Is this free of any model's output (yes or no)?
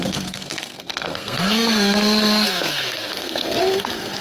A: no